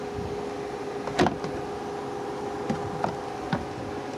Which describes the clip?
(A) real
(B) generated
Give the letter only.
A